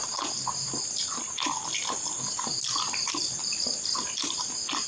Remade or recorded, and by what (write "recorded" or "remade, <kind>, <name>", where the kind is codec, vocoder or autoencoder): recorded